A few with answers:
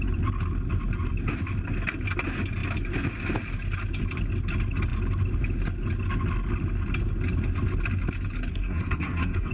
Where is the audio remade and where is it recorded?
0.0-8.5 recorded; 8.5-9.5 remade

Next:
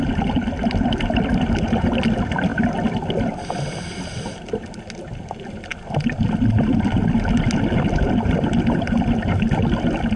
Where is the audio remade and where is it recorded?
0.0-10.2 recorded